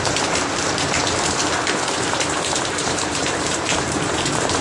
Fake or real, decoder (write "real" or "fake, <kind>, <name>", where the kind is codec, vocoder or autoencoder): fake, vocoder, BigVGAN v2